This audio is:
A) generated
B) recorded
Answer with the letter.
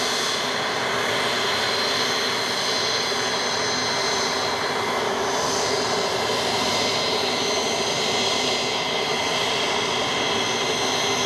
B